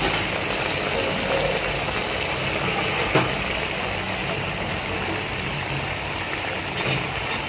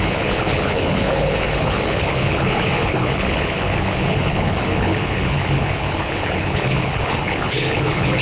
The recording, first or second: first